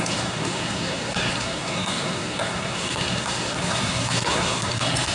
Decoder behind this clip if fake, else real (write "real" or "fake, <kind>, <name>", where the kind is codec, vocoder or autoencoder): fake, codec, SNAC